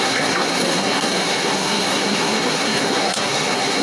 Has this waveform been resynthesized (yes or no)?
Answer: yes